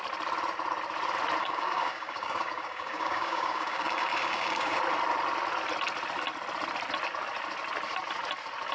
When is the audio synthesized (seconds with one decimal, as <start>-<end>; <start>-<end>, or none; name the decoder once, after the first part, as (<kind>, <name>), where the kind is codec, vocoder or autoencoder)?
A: 1.4-4.8 (codec, DAC)